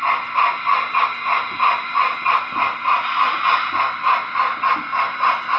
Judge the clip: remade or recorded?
recorded